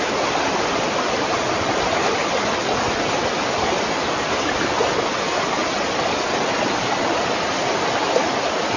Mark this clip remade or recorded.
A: recorded